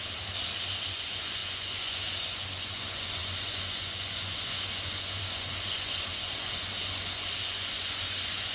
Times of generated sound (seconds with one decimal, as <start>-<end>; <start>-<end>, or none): 0.8-8.5